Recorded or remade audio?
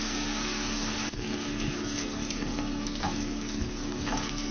remade